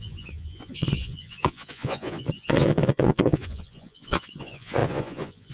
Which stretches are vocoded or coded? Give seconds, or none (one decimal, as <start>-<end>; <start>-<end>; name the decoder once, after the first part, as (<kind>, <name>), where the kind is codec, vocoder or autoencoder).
0.0-5.5 (vocoder, Vocos)